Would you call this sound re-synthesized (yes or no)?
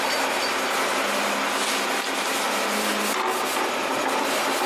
no